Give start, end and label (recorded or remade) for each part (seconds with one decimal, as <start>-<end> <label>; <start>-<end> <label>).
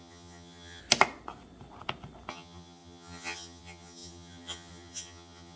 0.0-0.8 remade; 0.8-2.3 recorded; 2.3-5.6 remade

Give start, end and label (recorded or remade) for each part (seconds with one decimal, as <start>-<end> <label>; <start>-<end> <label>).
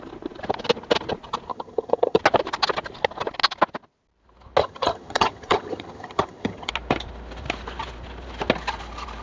0.0-1.5 recorded; 1.5-2.2 remade; 2.2-4.6 recorded; 4.6-6.7 remade; 6.7-9.2 recorded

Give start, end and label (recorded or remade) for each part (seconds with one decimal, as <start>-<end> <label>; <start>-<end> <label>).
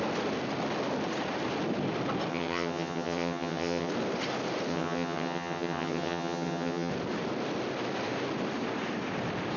0.0-2.3 recorded; 2.3-3.9 remade; 3.9-4.7 recorded; 4.7-6.9 remade; 6.9-9.6 recorded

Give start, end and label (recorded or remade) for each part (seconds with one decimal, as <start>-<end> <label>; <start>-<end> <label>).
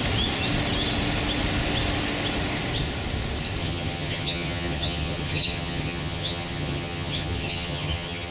0.0-3.6 recorded; 3.6-8.3 remade